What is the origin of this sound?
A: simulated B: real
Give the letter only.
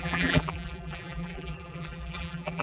A